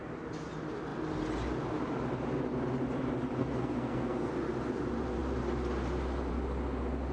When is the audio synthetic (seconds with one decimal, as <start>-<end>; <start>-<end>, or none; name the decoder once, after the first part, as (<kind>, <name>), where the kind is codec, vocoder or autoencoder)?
3.4-4.3 (codec, SNAC)